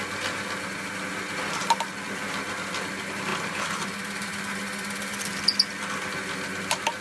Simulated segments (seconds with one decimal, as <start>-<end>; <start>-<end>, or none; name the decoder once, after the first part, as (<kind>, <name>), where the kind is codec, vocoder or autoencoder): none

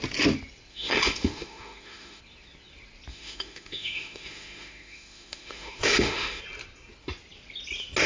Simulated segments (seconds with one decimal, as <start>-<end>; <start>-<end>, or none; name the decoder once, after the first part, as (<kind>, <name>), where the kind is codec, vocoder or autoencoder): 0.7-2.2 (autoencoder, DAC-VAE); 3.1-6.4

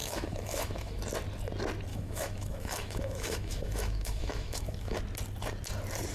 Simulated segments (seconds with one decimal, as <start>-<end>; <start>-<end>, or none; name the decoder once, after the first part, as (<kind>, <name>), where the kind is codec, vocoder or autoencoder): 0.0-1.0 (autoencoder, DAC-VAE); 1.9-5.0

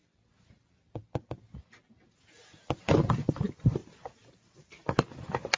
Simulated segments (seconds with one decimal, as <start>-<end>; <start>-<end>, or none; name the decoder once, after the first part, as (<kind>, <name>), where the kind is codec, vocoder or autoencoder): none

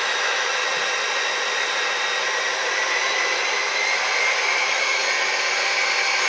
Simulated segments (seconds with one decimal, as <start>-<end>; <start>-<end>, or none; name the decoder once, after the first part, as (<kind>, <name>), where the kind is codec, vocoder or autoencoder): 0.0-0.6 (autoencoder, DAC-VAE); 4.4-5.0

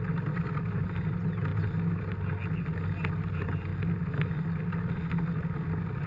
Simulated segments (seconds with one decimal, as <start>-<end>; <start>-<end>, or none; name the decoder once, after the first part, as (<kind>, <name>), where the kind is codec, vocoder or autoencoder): none

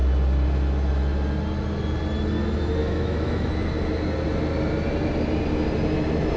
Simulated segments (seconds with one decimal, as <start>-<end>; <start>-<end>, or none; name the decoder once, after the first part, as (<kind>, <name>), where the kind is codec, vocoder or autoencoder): 2.8-3.5 (autoencoder, DAC-VAE)

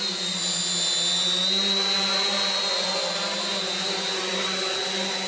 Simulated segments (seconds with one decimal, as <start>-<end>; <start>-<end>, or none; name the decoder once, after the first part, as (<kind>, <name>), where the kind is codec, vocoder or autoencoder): none